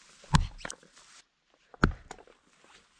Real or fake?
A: real